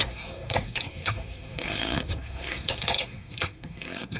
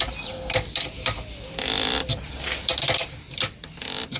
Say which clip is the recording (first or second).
second